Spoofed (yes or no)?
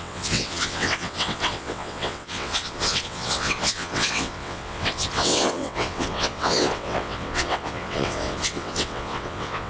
yes